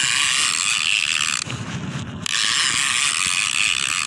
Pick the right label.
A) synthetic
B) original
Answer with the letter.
B